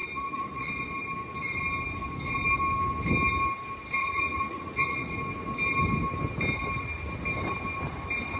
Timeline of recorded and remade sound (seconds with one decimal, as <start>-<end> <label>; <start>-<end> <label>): 0.0-0.7 remade; 0.7-4.0 recorded; 4.0-5.1 remade; 5.1-8.4 recorded